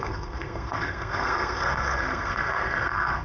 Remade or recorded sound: remade